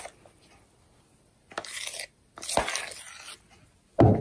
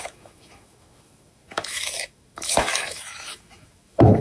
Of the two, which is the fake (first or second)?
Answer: second